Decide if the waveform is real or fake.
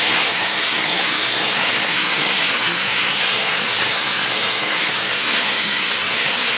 fake